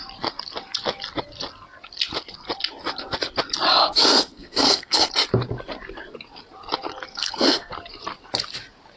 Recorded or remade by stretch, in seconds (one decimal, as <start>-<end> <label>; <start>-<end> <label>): 0.0-3.8 recorded; 3.8-5.1 remade; 5.1-7.1 recorded; 7.1-7.7 remade; 7.7-9.0 recorded